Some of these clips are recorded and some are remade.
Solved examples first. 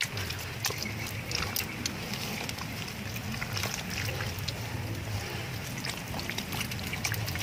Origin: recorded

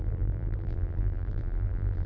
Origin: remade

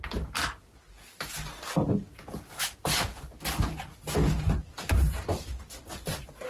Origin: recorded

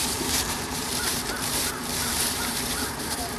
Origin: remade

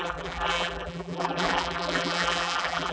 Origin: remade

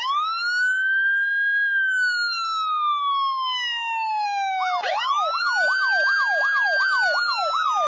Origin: recorded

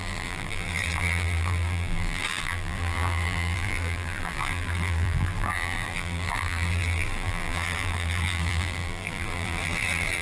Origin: remade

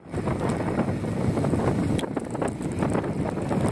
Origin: recorded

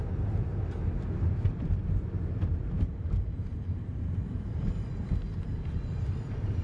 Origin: remade